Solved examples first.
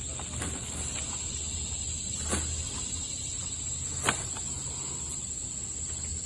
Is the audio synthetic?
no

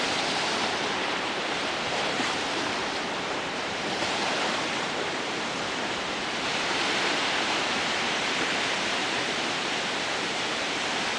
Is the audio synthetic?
yes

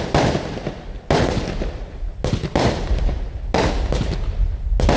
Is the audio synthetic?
no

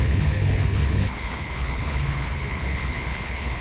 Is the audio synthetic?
yes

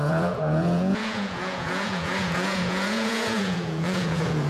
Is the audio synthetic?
yes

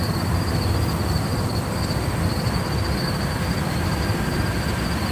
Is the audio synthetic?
yes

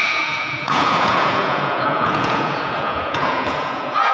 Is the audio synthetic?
yes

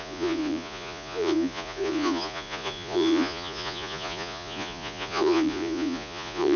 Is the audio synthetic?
yes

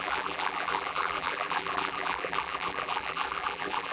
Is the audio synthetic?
yes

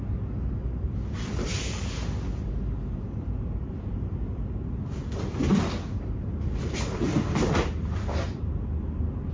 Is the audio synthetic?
no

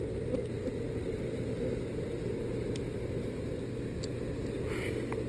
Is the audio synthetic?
no